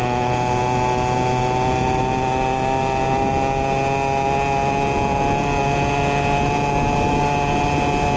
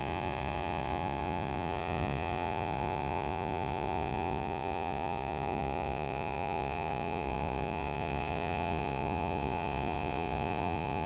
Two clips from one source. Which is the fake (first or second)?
second